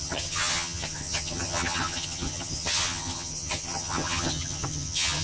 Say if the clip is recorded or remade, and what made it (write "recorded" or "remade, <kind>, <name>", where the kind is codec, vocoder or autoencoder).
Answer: remade, vocoder, HiFi-GAN